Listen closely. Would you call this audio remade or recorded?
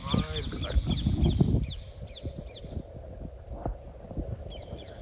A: recorded